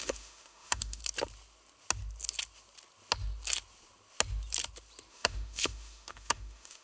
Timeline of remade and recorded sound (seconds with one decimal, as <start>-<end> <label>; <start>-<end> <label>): 0.0-1.0 remade; 1.0-5.1 recorded; 5.1-6.8 remade